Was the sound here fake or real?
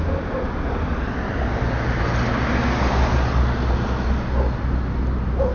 real